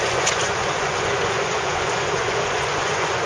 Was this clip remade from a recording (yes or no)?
yes